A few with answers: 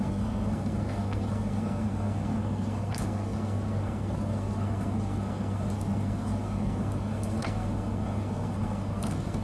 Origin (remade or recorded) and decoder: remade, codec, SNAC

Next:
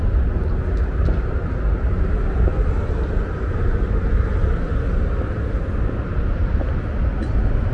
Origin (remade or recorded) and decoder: recorded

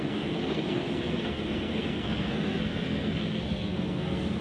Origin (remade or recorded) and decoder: remade, codec, SNAC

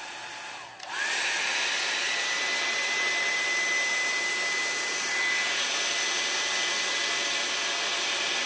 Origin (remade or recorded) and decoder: recorded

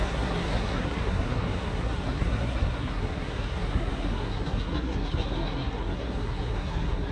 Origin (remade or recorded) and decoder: remade, codec, SNAC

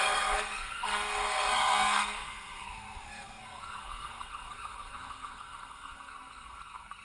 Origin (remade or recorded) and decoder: remade, codec, SNAC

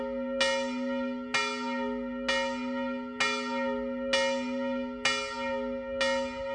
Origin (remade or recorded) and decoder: recorded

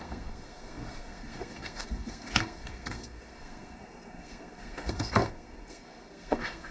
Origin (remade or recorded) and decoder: remade, codec, SNAC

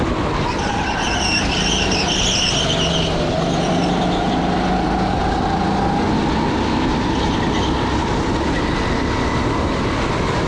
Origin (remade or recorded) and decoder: recorded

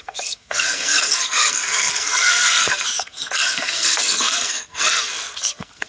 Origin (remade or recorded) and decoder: remade, codec, SNAC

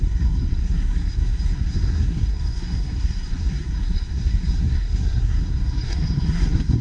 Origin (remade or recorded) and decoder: remade, codec, SNAC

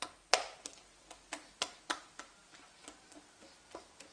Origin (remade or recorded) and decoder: recorded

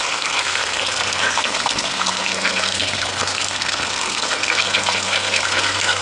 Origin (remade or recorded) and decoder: remade, codec, SNAC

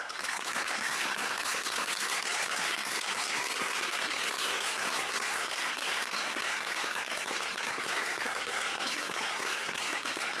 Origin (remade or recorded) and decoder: remade, codec, SNAC